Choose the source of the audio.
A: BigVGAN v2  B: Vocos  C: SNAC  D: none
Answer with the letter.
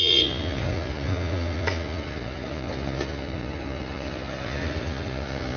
B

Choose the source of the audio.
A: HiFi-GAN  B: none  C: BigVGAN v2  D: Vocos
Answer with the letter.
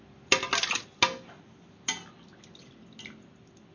B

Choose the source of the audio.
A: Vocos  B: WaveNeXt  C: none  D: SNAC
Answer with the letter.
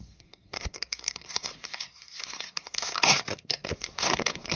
D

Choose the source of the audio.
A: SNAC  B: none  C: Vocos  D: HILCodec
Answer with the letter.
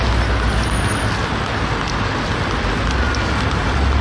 B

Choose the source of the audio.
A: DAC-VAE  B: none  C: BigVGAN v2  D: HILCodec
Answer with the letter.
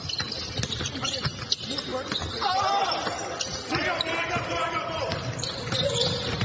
B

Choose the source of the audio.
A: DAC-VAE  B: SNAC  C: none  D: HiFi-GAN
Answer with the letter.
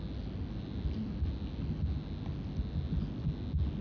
C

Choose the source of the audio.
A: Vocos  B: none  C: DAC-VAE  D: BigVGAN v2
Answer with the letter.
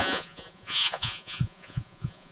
A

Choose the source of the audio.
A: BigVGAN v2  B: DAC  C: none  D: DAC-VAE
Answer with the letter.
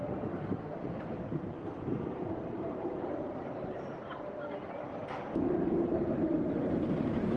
A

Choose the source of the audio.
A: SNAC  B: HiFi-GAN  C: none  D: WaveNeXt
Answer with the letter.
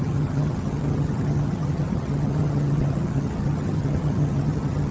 B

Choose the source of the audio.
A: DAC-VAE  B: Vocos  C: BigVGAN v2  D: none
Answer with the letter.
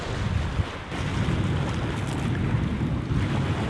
D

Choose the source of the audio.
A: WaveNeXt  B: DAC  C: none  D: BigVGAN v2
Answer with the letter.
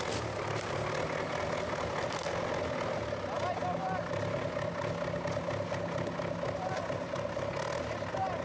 C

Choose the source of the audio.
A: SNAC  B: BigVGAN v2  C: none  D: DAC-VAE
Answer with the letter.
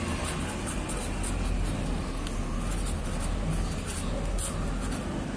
C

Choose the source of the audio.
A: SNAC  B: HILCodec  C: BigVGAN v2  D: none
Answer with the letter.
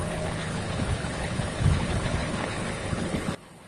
B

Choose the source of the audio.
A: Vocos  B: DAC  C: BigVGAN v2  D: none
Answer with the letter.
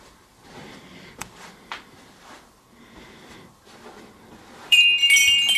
C